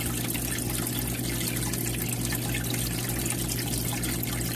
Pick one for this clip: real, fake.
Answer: real